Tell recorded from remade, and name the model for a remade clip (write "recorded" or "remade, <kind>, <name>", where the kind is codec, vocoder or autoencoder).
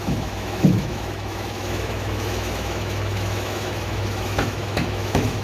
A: remade, autoencoder, DAC-VAE